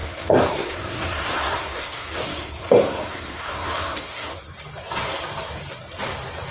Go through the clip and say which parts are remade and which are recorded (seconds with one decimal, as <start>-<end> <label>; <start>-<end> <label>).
0.0-4.3 remade; 4.3-6.5 recorded